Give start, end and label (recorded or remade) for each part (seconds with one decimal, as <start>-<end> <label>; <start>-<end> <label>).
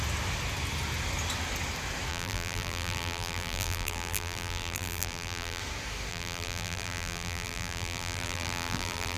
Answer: 0.0-2.1 recorded; 2.1-5.6 remade; 5.6-6.1 recorded; 6.1-9.2 remade